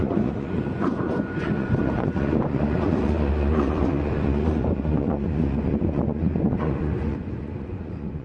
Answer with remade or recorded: remade